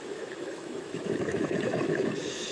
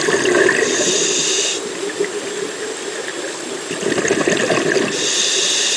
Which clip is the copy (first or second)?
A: first